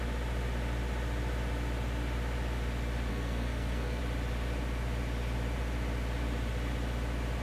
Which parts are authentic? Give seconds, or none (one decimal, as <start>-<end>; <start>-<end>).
0.0-3.1; 4.0-7.4